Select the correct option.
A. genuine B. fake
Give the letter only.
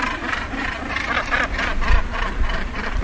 A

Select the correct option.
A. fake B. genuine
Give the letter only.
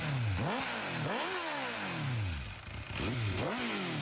B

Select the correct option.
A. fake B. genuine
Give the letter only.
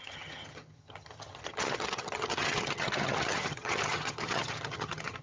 A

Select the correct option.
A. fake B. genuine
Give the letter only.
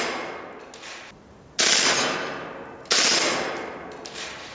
B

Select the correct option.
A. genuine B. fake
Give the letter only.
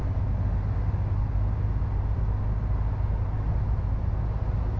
A